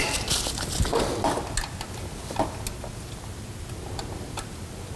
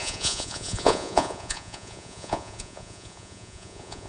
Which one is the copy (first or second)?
second